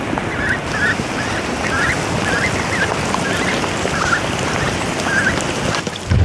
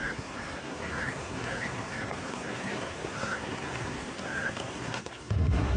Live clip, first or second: first